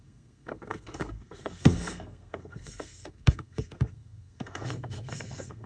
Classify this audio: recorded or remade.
remade